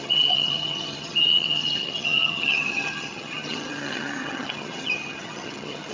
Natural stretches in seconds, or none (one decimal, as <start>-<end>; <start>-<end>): none